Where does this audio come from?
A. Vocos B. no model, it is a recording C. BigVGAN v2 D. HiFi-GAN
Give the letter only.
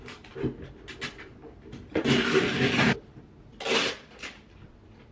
B